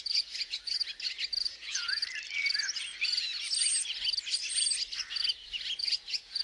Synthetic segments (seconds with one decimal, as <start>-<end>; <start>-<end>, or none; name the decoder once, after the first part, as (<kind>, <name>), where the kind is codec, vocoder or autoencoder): 0.0-0.8 (vocoder, Vocos); 1.4-2.0; 5.8-6.4